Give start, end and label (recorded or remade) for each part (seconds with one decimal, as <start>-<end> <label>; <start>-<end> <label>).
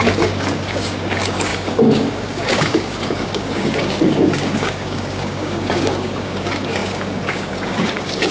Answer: 0.0-8.3 remade